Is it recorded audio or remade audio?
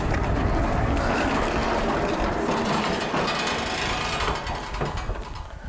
recorded